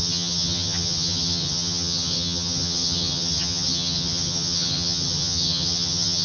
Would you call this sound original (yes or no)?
no